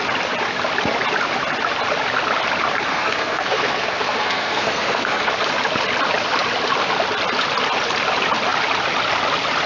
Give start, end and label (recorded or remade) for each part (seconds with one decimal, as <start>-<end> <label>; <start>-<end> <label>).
0.0-2.9 recorded; 2.9-5.3 remade; 5.3-9.7 recorded